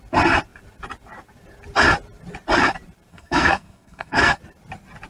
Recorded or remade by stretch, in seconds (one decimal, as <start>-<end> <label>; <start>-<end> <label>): 0.0-3.1 recorded; 3.1-4.4 remade; 4.4-5.1 recorded